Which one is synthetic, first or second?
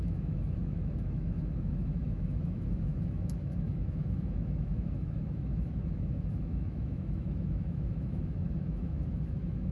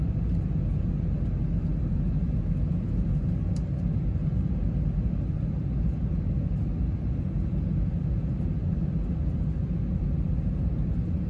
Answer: first